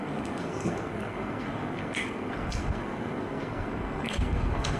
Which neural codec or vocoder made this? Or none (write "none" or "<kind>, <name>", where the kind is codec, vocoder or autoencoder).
codec, SNAC